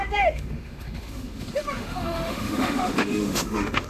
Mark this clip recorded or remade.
remade